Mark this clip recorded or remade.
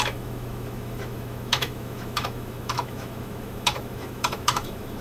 remade